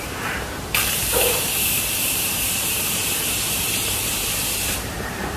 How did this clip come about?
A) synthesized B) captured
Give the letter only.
A